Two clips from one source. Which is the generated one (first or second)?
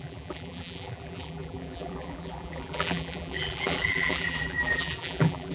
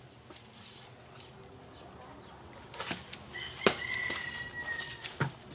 first